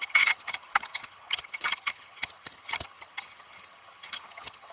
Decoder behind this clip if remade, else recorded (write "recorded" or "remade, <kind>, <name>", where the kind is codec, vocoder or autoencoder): remade, vocoder, HiFi-GAN